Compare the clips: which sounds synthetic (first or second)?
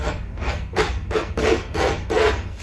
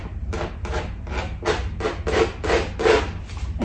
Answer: first